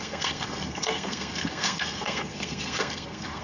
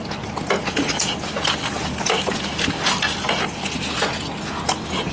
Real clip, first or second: second